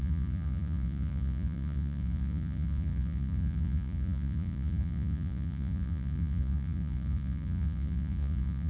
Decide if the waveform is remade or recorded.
remade